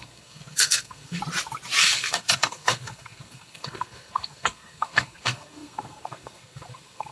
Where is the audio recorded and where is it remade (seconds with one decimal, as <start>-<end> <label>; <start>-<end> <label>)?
0.0-1.2 remade; 1.2-1.8 recorded; 1.8-7.1 remade